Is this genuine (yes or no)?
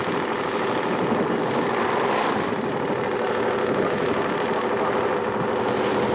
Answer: yes